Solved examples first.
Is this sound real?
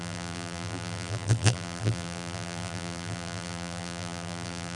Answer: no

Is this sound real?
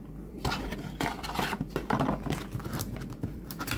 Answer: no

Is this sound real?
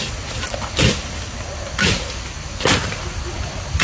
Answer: yes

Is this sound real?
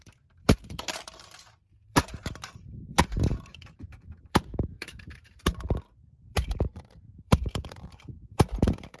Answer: no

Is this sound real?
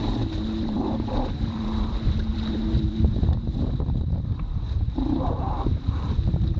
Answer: no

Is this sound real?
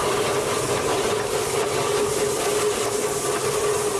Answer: yes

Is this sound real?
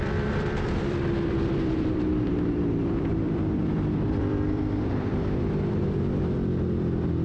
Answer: no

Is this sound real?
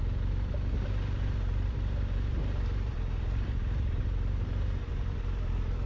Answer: no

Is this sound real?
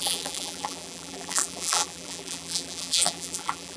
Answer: no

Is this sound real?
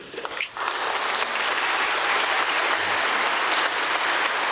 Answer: yes